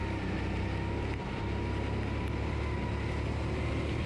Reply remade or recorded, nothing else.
recorded